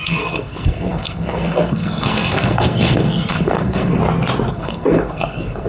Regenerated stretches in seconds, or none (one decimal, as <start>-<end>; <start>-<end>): 0.0-4.0; 4.5-5.7